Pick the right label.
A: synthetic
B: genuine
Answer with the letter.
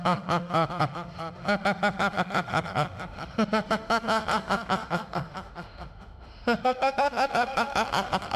A